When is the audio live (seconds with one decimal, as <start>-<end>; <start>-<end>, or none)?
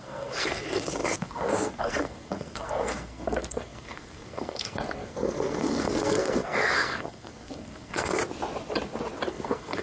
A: 8.2-9.3